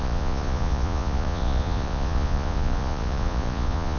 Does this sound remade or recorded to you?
remade